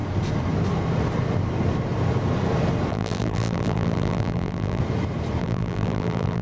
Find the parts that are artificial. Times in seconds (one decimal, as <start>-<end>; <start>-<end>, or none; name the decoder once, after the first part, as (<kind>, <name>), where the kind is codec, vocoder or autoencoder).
2.9-4.8 (vocoder, BigVGAN v2); 5.4-6.4